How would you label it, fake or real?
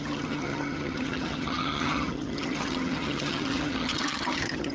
fake